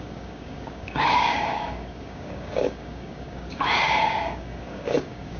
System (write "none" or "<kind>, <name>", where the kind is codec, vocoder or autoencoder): codec, DAC